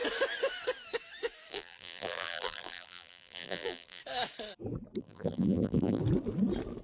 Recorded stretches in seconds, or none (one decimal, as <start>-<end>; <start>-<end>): 0.0-1.5; 4.0-5.0; 6.0-6.8